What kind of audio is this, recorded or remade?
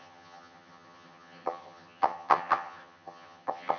remade